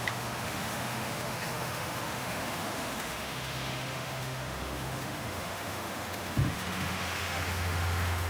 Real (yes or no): no